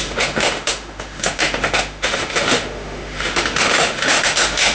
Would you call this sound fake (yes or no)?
yes